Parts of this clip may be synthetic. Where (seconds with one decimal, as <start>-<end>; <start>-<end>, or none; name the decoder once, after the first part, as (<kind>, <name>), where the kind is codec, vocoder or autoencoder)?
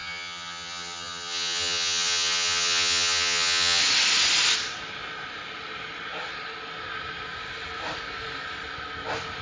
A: 0.0-3.8 (vocoder, HiFi-GAN)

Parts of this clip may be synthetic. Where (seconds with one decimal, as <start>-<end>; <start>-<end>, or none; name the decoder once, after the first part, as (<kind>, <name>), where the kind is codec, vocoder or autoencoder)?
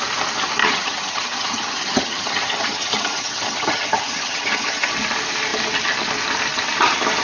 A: 0.6-4.9 (vocoder, HiFi-GAN)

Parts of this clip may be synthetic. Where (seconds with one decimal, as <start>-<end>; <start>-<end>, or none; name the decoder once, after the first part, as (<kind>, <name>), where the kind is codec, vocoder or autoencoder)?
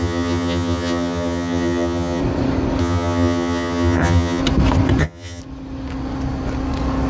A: 0.0-2.2 (vocoder, HiFi-GAN); 2.8-4.4; 5.0-5.4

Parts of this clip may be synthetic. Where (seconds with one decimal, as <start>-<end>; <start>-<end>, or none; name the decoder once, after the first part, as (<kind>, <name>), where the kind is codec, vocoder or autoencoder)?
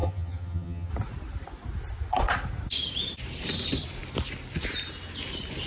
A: 0.0-0.9 (vocoder, HiFi-GAN)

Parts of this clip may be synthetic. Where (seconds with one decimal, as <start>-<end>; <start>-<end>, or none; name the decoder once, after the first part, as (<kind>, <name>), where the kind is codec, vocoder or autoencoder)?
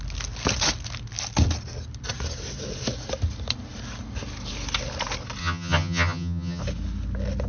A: 5.4-6.6 (vocoder, HiFi-GAN)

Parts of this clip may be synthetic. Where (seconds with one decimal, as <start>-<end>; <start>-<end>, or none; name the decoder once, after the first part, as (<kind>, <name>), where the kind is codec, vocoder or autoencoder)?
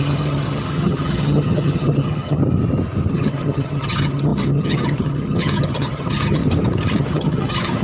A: 0.0-2.4 (vocoder, HiFi-GAN); 3.1-6.4; 7.0-7.8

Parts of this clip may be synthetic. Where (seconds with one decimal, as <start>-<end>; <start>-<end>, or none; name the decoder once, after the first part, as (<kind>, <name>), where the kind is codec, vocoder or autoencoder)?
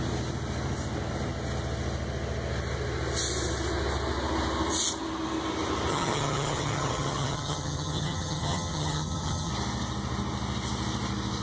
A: 5.9-9.5 (vocoder, HiFi-GAN)